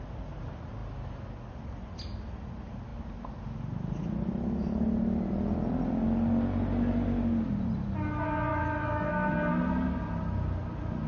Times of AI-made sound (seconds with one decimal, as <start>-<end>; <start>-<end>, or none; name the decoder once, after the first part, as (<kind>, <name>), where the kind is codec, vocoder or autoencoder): 8.5-9.1 (autoencoder, DAC-VAE)